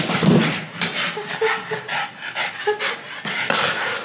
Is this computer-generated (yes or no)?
no